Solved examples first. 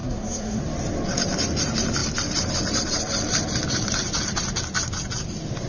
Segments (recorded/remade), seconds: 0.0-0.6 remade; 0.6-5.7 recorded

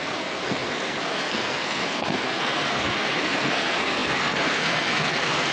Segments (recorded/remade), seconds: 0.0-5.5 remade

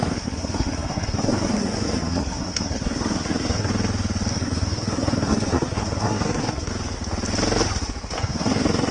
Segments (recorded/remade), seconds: 0.0-3.7 remade; 3.7-4.3 recorded; 4.3-6.7 remade; 6.7-8.2 recorded; 8.2-8.9 remade